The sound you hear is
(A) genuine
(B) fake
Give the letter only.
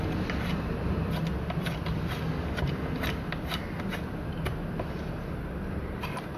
A